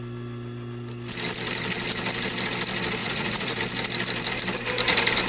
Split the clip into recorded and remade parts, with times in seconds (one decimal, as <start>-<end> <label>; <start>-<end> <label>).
0.0-3.0 recorded; 3.0-3.6 remade; 3.6-5.3 recorded